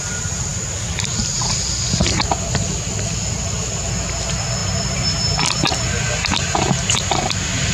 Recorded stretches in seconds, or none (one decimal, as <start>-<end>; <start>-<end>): 0.0-7.7